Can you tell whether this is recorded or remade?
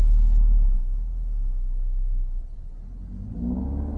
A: recorded